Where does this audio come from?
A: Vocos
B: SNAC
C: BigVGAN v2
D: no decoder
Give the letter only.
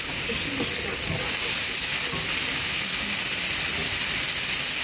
D